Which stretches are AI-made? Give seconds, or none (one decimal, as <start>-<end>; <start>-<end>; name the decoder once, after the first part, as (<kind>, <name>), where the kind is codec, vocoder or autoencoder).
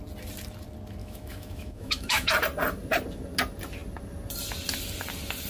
1.0-2.3 (autoencoder, DAC-VAE)